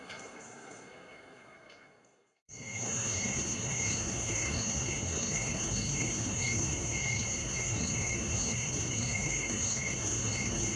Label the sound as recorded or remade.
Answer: remade